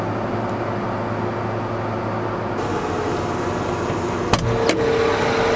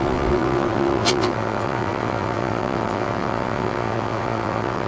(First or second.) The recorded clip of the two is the first